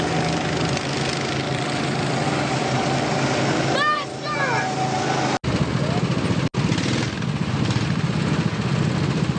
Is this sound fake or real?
real